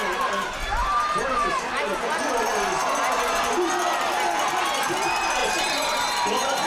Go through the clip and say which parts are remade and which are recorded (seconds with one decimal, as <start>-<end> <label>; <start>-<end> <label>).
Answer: 0.0-0.8 recorded; 0.8-2.0 remade; 2.0-5.4 recorded; 5.4-6.7 remade